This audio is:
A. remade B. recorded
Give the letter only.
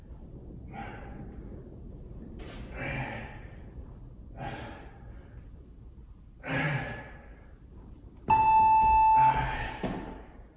B